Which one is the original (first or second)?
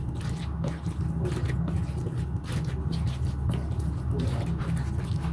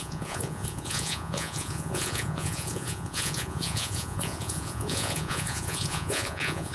first